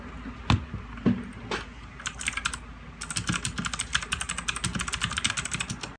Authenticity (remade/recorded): recorded